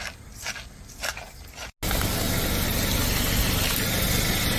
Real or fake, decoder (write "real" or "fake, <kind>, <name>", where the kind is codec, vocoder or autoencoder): real